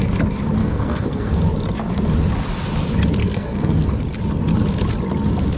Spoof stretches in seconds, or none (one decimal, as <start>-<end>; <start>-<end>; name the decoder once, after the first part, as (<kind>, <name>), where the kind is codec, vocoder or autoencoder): 0.6-1.4 (codec, SNAC); 3.2-3.9